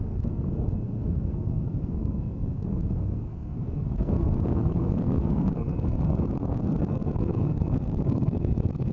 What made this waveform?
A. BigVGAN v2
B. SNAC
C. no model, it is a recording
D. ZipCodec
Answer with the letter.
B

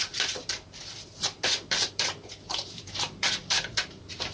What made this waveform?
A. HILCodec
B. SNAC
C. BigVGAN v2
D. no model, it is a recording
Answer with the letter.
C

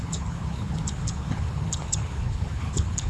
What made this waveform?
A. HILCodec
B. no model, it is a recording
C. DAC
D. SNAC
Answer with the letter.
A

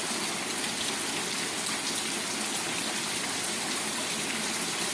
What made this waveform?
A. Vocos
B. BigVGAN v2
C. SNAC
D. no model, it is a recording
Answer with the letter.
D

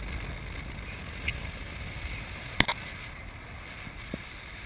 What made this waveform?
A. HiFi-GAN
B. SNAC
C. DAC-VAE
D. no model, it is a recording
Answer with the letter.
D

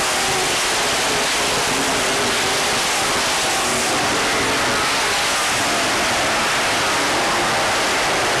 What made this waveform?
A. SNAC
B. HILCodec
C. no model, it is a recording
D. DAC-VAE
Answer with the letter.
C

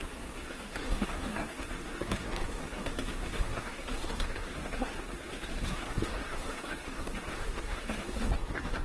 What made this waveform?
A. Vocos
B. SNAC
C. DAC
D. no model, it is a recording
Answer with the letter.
B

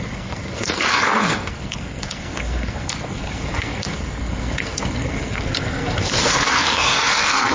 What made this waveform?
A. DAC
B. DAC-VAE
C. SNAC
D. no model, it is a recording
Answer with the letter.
C